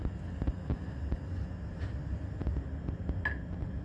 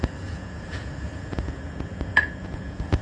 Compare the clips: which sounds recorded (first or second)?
first